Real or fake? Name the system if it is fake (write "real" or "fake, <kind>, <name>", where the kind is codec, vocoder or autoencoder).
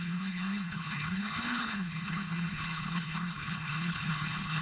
fake, codec, HILCodec